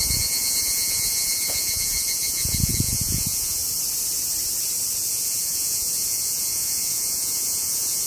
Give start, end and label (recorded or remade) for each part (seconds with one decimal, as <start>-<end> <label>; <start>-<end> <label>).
0.0-3.6 remade; 3.6-5.1 recorded; 5.1-8.1 remade